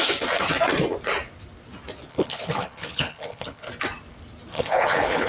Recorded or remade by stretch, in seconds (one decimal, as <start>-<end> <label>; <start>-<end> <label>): 0.0-2.1 recorded; 2.1-3.7 remade; 3.7-4.5 recorded; 4.5-5.3 remade